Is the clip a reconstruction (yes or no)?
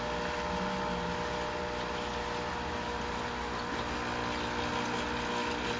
no